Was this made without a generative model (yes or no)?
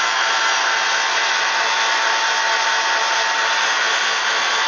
yes